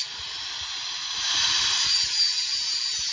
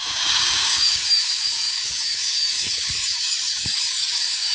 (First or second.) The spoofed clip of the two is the second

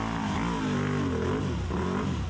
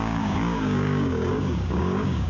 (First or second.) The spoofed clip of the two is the second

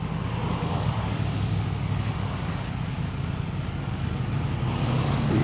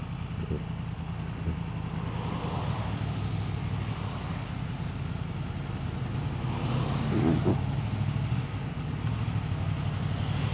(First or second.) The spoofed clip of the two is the first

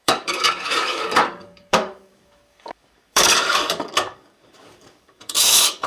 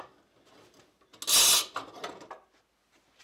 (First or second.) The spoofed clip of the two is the first